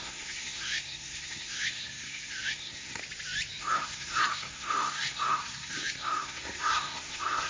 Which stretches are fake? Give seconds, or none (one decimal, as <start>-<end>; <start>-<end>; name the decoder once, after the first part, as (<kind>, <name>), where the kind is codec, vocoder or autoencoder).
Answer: 0.0-3.0 (codec, SNAC); 3.6-7.5